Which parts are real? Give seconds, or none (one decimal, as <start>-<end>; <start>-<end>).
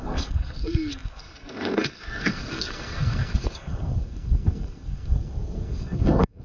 none